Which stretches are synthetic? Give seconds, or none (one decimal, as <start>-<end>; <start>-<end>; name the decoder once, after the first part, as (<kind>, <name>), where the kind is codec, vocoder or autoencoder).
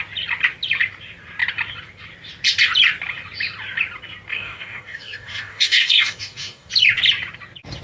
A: 4.3-6.7 (codec, DAC)